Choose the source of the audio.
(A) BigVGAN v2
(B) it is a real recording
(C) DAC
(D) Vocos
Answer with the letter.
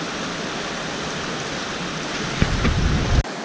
B